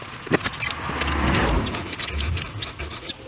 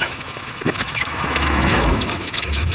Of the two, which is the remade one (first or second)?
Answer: second